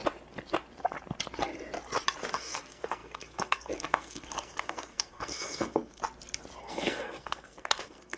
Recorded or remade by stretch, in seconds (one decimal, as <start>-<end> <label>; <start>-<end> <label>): 0.0-2.3 recorded; 2.3-6.0 remade; 6.0-6.6 recorded; 6.6-8.2 remade